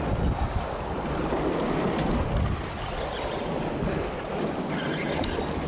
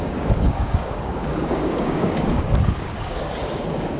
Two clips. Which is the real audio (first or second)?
first